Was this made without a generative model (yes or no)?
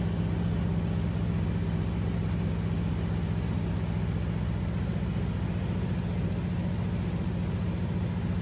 yes